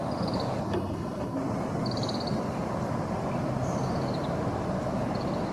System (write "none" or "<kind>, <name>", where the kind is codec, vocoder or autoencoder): none